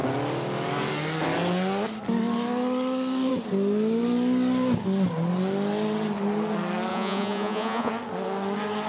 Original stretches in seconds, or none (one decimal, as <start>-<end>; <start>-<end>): 0.0-6.9; 7.9-8.9